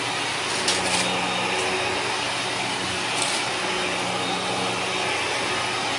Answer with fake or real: real